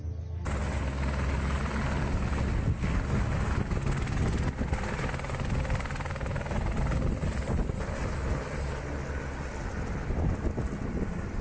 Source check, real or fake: real